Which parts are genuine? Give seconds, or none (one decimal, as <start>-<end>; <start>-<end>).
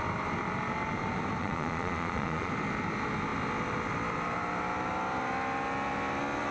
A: 0.0-1.4; 2.5-6.5